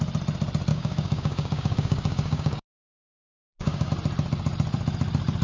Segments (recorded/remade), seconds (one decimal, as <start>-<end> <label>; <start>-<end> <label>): 0.0-0.7 recorded; 0.7-3.9 remade; 3.9-5.4 recorded